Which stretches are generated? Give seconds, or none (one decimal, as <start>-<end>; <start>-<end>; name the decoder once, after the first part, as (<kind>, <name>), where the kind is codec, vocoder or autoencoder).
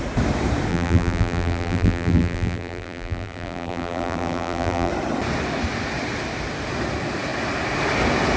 0.7-4.9 (vocoder, BigVGAN v2)